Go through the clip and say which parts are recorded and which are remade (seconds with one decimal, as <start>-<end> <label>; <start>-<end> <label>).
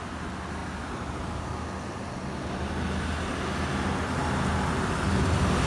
0.0-5.7 recorded